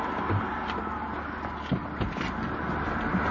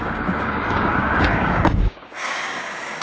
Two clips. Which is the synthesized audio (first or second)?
second